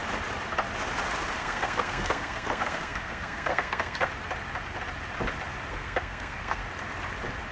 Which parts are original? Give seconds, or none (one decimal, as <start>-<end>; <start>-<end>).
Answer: 0.0-1.4; 4.1-5.7; 6.6-7.5